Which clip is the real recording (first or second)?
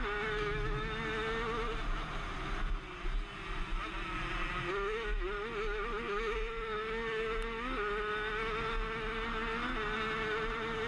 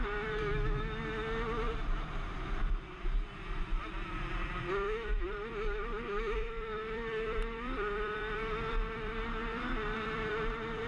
first